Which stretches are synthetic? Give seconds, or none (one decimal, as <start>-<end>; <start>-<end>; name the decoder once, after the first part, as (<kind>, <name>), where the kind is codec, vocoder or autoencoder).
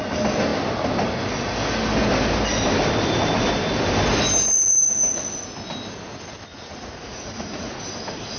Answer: 6.5-7.8 (vocoder, Vocos)